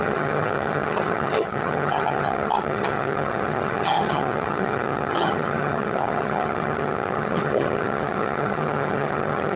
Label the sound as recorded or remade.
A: remade